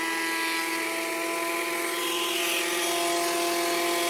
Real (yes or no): yes